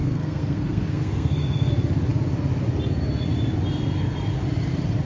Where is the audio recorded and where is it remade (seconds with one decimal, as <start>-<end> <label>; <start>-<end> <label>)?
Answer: 0.0-1.7 remade; 1.7-5.0 recorded